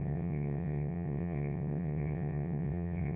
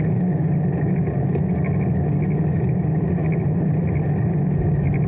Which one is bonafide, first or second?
second